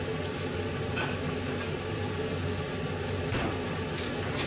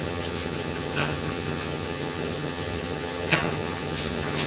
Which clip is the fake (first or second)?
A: second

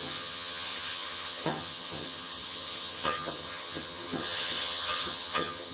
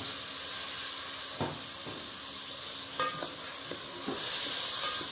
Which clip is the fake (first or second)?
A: first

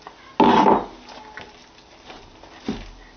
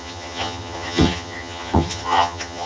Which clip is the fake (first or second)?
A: second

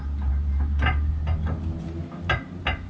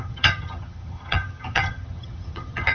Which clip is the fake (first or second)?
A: second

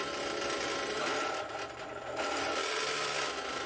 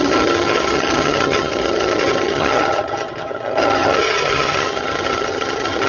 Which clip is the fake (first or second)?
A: second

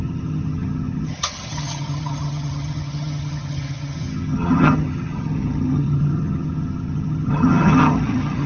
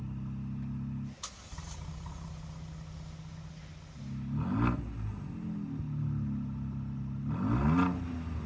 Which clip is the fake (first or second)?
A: first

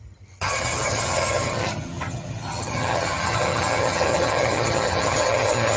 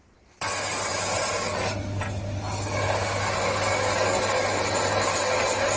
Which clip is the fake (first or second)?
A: first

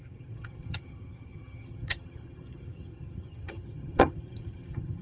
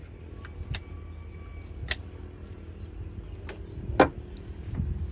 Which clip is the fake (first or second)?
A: first